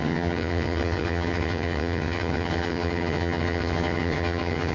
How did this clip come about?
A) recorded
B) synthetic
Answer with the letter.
B